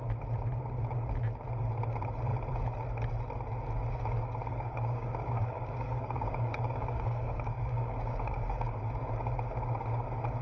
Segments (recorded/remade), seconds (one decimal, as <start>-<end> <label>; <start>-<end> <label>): 0.0-4.5 recorded; 4.5-8.8 remade; 8.8-10.4 recorded